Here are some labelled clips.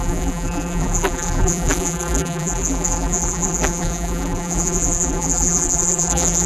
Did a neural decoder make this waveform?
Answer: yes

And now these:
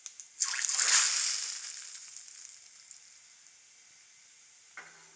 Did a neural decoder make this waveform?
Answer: no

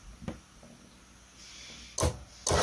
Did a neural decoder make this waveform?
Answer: no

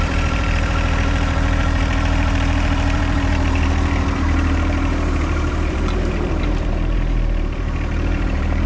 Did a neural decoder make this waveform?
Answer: yes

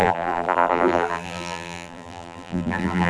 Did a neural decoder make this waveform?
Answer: yes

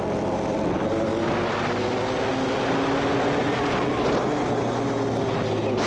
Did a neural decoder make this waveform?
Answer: no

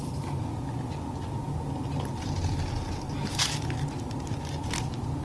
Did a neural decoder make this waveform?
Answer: no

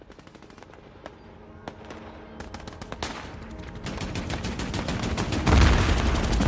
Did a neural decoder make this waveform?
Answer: no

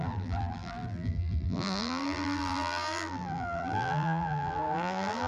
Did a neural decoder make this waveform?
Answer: yes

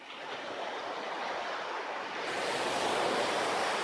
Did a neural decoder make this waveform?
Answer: no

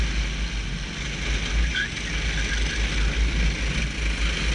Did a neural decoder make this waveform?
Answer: no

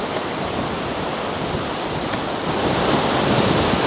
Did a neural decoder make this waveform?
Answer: yes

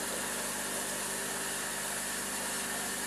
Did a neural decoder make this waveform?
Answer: no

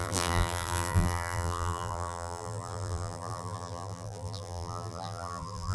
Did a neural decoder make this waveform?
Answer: yes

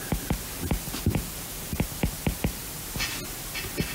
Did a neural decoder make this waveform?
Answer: no